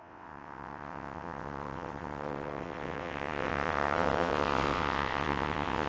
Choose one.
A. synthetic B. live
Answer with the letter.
A